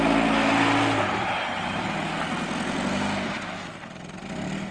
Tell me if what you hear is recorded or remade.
recorded